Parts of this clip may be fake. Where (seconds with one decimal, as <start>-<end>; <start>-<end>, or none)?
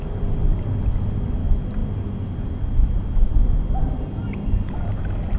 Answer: none